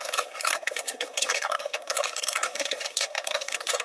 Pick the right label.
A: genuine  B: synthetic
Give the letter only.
B